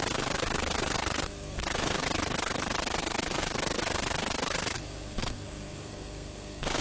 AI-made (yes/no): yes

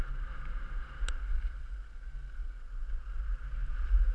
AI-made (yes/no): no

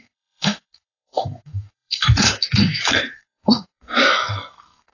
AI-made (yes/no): yes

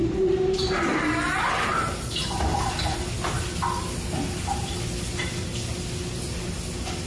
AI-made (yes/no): no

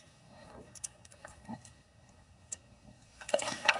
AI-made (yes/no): yes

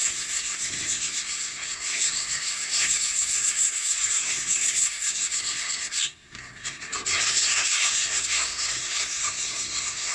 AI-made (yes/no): yes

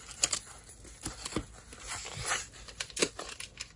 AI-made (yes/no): no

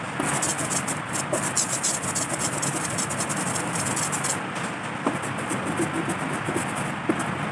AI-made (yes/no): no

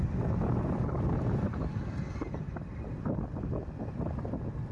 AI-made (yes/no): no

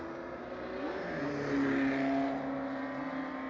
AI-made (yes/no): no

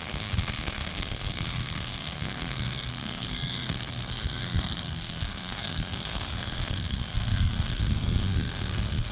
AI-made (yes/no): yes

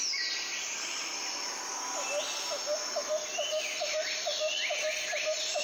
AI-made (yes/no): no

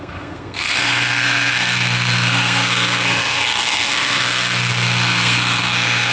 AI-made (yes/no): yes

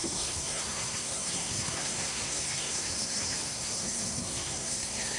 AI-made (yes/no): yes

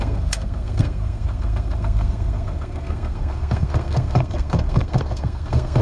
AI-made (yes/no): yes